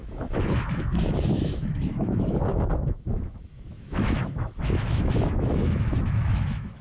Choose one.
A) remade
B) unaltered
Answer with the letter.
A